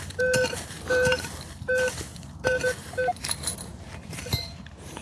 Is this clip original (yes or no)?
no